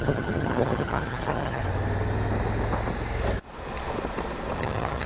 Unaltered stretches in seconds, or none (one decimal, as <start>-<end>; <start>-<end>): 1.6-4.6